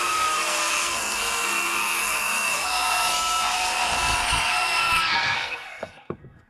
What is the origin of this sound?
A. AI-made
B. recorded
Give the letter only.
A